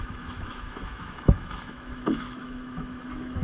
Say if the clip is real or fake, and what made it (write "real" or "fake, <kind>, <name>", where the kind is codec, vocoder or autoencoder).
fake, autoencoder, DAC-VAE